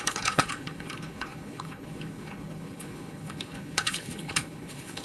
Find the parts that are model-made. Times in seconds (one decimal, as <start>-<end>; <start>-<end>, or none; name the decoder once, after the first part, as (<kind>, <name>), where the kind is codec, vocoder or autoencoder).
0.0-5.0 (codec, HILCodec)